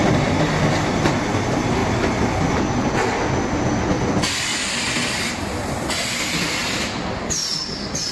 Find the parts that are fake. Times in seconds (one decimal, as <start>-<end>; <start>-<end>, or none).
none